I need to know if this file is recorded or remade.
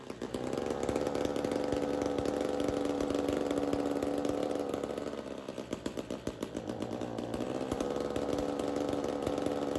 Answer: recorded